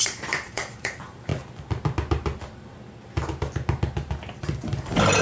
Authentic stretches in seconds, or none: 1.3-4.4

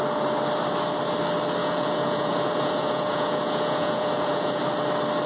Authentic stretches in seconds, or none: 0.0-1.6; 4.6-5.3

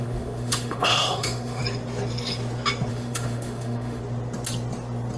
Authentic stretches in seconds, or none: 1.6-2.9; 4.0-5.2